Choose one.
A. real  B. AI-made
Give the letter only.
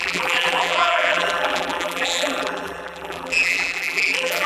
B